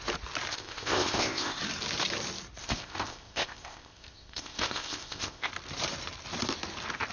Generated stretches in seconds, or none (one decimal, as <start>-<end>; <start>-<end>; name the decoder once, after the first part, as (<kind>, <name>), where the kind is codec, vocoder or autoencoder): 0.5-1.6 (codec, ZipCodec); 2.6-5.5